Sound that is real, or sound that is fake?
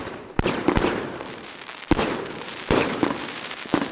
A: fake